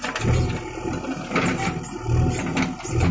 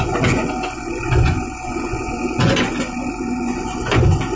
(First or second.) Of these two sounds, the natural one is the first